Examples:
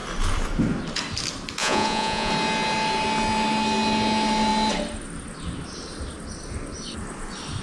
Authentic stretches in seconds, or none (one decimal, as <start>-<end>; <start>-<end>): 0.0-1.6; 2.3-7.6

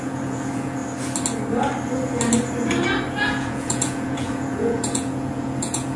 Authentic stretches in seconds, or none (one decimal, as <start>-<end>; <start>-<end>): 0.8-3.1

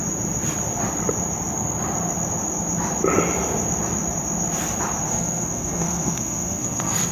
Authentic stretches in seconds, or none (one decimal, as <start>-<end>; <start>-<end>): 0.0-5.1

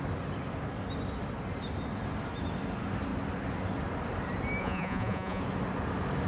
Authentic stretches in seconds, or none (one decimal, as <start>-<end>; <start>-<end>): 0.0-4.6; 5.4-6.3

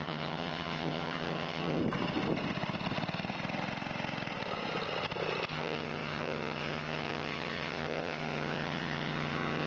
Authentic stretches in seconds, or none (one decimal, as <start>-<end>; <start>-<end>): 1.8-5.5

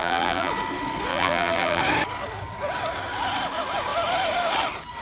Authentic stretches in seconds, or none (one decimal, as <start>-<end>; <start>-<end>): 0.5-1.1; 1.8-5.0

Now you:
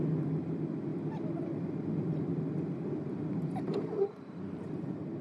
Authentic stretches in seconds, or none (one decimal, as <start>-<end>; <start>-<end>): 0.0-5.2

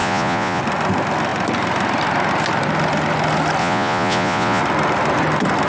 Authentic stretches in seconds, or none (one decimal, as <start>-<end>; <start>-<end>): 0.6-3.6; 4.6-5.7